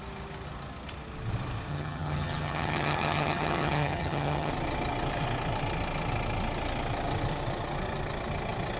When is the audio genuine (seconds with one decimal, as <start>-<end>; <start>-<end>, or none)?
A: 0.0-1.7; 4.5-8.8